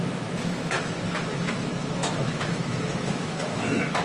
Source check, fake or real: fake